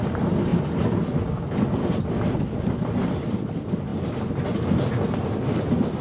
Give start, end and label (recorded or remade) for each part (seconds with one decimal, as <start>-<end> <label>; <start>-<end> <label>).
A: 0.0-6.0 recorded